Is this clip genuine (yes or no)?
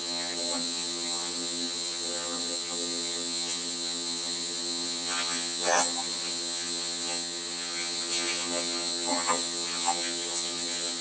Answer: no